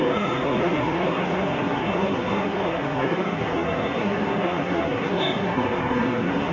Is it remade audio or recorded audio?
remade